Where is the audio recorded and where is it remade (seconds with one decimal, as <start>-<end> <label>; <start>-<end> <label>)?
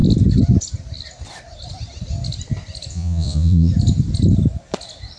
0.0-2.9 recorded; 2.9-3.7 remade; 3.7-5.2 recorded